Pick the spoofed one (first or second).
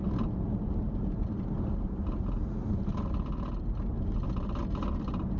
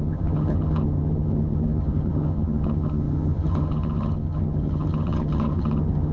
second